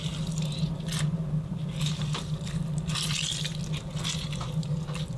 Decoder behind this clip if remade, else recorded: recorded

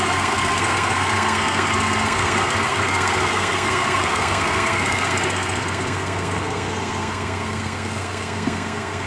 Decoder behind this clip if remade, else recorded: remade, codec, SNAC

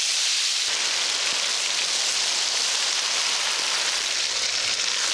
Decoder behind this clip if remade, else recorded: recorded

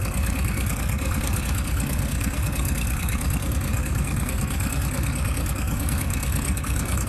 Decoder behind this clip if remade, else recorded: remade, codec, SNAC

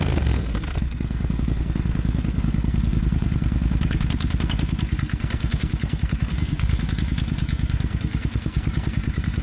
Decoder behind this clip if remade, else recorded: remade, codec, SNAC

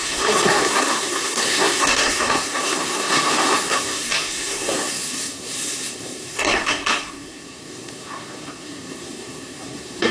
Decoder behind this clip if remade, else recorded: remade, codec, SNAC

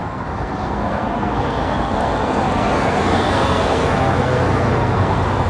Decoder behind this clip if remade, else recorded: remade, codec, SNAC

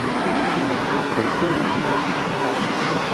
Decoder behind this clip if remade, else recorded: remade, codec, SNAC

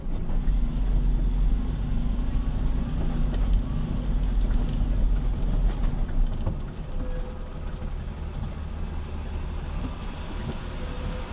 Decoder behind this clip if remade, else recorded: recorded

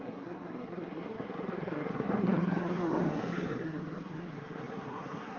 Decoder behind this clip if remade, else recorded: remade, codec, SNAC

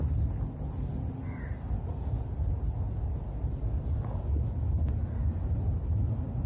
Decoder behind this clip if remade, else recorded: recorded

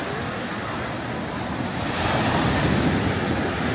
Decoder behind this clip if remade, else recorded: recorded